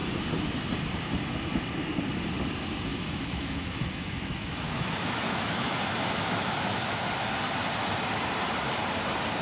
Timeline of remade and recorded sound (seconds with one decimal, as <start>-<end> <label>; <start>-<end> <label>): 0.0-2.9 recorded; 2.9-7.1 remade; 7.1-9.4 recorded